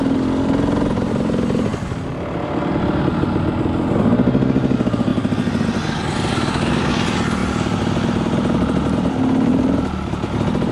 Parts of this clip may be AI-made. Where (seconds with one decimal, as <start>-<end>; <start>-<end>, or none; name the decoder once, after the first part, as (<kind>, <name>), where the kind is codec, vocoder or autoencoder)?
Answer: none